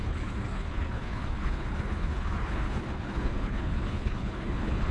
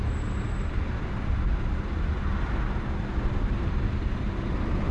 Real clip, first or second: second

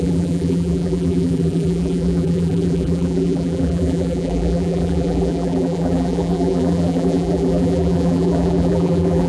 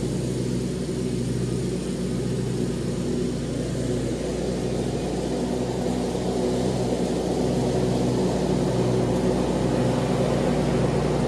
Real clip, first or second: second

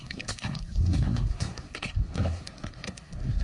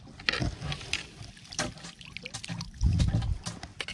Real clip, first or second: second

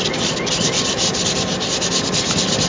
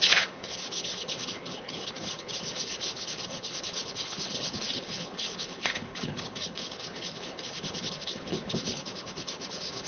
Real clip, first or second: first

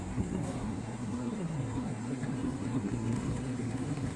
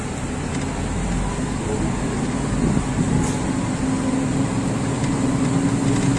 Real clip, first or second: second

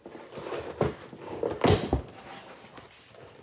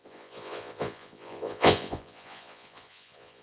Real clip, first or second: first